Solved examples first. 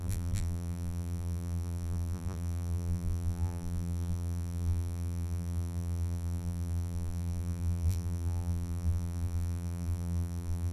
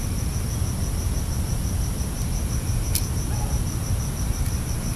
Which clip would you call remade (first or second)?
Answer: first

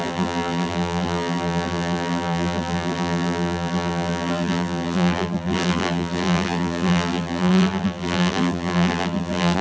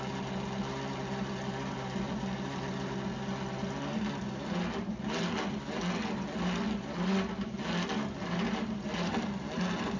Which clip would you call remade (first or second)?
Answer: first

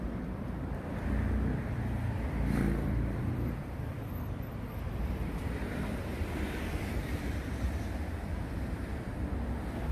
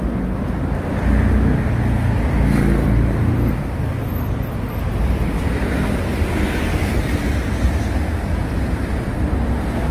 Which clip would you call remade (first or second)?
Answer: first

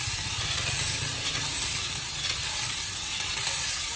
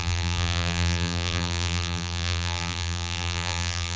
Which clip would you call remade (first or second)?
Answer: second